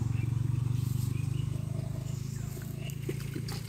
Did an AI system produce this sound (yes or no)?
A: no